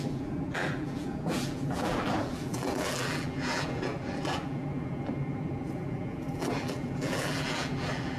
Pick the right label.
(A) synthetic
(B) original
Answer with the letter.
A